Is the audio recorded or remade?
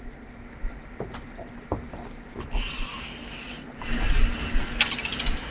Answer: recorded